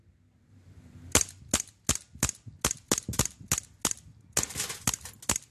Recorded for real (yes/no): yes